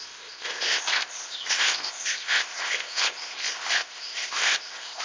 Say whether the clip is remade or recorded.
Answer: remade